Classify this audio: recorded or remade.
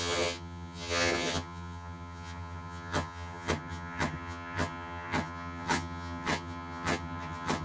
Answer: remade